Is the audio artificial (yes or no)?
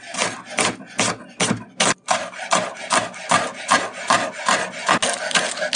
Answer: no